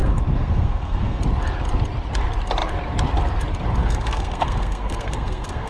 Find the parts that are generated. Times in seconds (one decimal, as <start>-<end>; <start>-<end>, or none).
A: 0.0-1.2; 3.8-5.7